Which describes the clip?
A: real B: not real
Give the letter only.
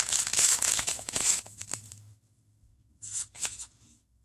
B